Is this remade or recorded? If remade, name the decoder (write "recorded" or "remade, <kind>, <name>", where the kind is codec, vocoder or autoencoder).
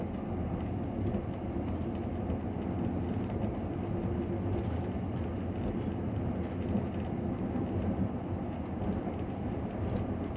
recorded